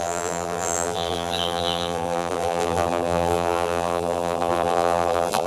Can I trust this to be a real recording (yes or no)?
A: no